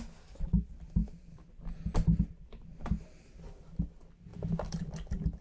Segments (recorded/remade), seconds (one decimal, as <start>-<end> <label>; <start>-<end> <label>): 0.0-5.4 recorded